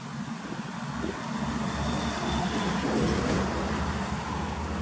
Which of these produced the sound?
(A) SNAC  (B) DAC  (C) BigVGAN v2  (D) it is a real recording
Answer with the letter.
D